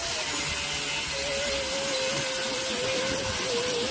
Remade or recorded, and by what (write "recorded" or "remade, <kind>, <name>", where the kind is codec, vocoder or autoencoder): recorded